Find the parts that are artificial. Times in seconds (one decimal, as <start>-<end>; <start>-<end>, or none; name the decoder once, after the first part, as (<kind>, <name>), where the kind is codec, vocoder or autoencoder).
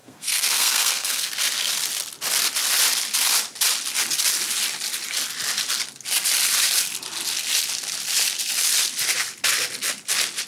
0.0-1.3 (codec, SNAC)